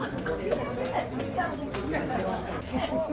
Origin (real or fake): real